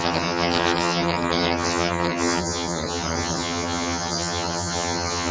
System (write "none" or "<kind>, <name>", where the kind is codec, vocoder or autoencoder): vocoder, HiFi-GAN